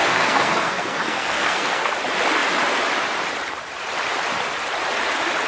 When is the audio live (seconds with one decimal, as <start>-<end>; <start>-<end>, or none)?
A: 1.9-5.5